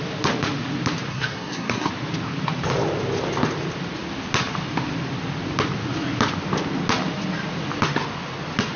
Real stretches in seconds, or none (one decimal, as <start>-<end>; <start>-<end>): 0.0-1.1; 1.9-8.8